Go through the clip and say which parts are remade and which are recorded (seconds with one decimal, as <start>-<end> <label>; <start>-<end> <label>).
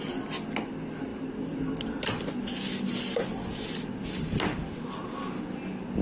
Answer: 0.0-6.0 recorded